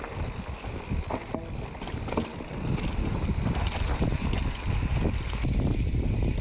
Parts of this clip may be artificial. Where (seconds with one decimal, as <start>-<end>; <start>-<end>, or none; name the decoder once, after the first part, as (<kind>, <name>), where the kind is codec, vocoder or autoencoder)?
none